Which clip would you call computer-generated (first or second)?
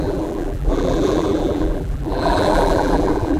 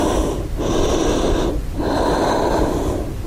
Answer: first